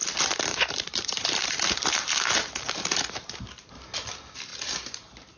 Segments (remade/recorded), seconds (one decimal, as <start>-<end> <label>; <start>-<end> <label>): 0.0-0.5 recorded; 0.5-3.7 remade; 3.7-4.5 recorded; 4.5-5.4 remade